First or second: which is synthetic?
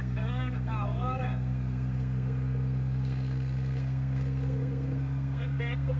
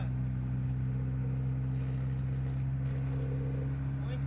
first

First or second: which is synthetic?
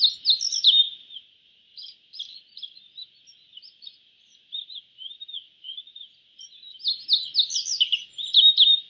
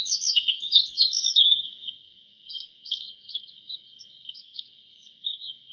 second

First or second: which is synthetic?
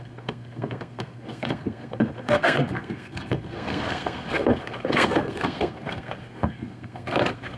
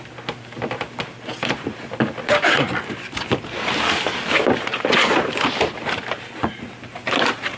first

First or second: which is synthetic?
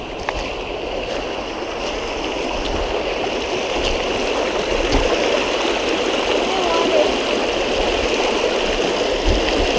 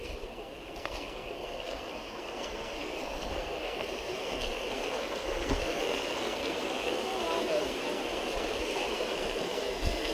second